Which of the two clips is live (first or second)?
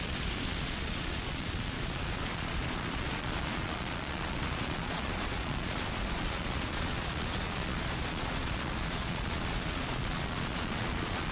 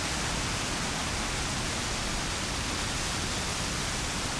second